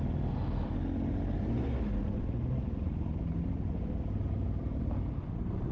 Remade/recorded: recorded